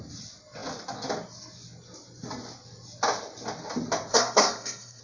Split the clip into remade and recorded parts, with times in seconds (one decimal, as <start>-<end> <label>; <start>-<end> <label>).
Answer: 0.0-4.1 recorded; 4.1-5.0 remade